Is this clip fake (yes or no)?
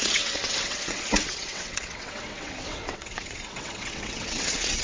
yes